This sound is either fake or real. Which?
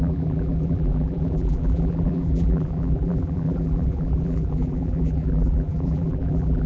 fake